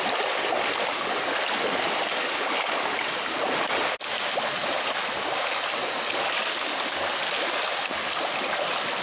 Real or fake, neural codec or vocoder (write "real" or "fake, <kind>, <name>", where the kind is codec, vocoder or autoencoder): real